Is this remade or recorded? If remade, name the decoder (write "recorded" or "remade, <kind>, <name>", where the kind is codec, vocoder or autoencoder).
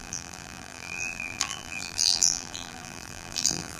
remade, vocoder, BigVGAN v2